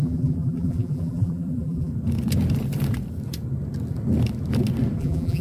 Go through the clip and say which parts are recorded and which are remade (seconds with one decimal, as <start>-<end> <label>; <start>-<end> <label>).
0.0-1.9 remade; 1.9-5.0 recorded; 5.0-5.4 remade